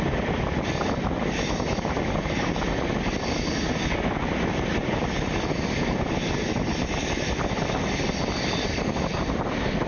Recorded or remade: recorded